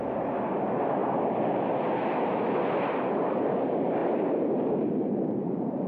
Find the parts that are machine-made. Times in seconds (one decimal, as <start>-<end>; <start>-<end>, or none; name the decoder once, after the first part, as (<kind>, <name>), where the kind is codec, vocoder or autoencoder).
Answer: 4.0-5.1 (vocoder, BigVGAN v2)

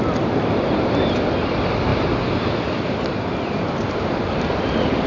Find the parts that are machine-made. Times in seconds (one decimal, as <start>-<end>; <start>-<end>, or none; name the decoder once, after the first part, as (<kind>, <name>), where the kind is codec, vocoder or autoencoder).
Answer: 1.9-5.1 (vocoder, BigVGAN v2)

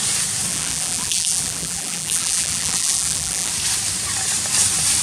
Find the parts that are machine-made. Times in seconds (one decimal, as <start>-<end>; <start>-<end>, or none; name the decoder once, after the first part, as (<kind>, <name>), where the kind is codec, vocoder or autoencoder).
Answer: 0.5-3.5 (vocoder, BigVGAN v2)

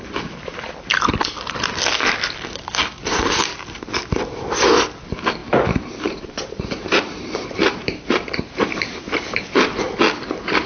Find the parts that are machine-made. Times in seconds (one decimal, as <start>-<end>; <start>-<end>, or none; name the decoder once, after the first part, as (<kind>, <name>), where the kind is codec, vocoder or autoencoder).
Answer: 5.4-9.0 (vocoder, BigVGAN v2)

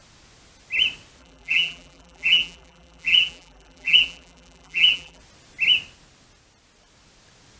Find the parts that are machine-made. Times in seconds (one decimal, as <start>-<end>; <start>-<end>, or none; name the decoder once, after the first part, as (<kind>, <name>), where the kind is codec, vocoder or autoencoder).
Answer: 1.2-5.2 (vocoder, BigVGAN v2)

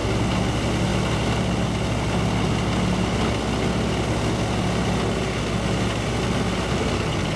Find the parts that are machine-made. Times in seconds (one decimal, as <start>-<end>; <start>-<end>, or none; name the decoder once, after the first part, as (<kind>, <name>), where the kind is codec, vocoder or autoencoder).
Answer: none

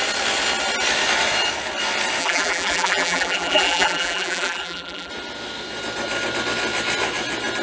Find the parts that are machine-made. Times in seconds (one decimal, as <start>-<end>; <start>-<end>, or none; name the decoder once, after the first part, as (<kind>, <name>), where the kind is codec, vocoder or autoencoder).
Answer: 2.2-5.1 (vocoder, BigVGAN v2)

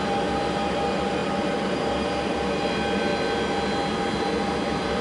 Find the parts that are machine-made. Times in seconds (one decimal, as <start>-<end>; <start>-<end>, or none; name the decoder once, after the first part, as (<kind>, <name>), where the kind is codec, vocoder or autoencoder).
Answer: 0.0-3.1 (vocoder, BigVGAN v2); 4.2-5.0